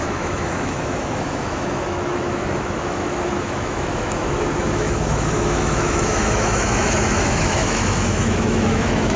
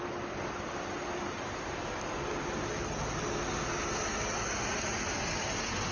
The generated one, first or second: first